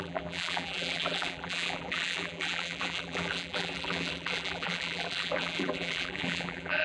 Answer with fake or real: fake